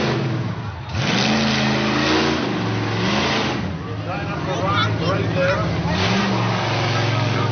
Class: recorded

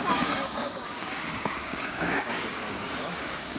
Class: remade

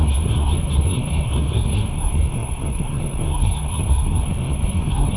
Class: remade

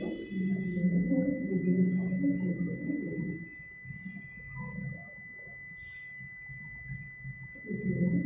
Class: recorded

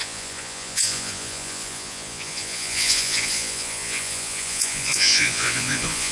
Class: remade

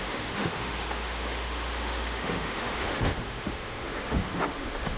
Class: remade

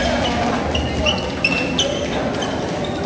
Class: recorded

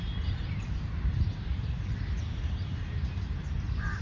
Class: remade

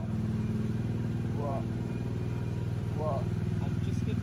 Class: remade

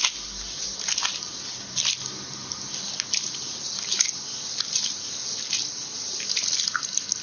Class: recorded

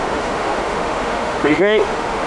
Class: remade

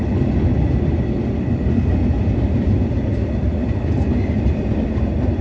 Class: recorded